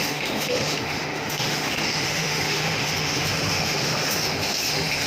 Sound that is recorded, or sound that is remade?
remade